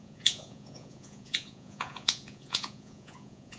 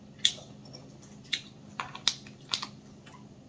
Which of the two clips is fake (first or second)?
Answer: first